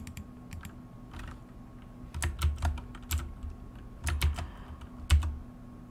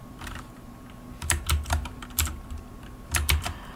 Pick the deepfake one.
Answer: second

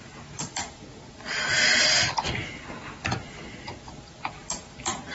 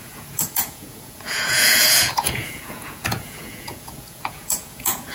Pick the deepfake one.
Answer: second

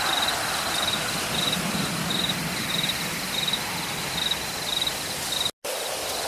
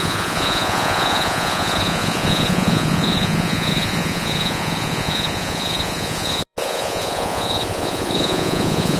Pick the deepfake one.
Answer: second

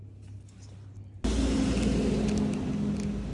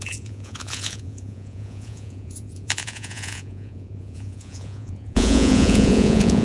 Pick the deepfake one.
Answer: second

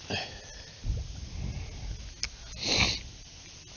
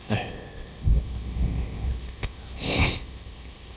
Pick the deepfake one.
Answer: second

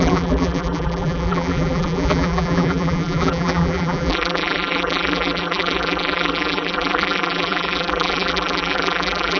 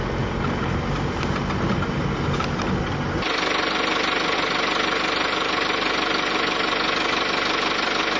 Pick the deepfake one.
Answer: first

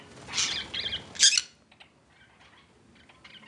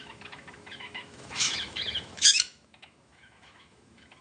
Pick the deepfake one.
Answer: second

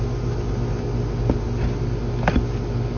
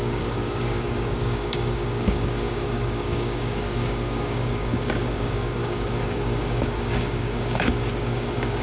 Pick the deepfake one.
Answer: second